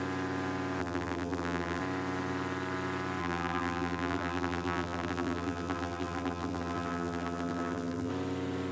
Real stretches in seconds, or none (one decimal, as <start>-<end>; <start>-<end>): 0.0-0.8; 1.8-3.2; 8.1-8.7